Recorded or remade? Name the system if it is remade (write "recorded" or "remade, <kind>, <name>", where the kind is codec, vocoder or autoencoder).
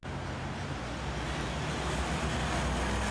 recorded